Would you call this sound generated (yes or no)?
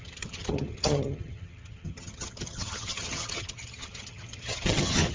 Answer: yes